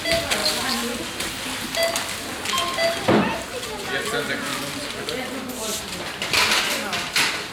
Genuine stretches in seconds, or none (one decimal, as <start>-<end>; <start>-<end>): 0.0-7.5